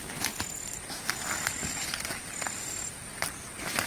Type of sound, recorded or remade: recorded